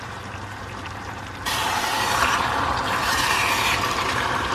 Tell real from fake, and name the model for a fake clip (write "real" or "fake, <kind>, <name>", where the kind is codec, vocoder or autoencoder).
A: fake, vocoder, BigVGAN v2